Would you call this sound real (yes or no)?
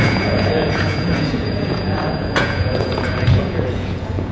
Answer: no